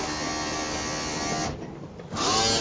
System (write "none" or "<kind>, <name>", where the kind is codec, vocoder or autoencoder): none